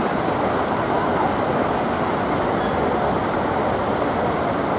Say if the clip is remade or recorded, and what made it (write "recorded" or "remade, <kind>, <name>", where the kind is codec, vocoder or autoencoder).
recorded